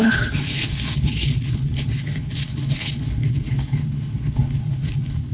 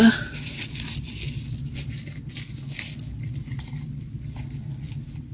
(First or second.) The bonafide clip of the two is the second